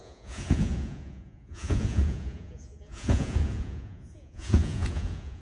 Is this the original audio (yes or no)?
no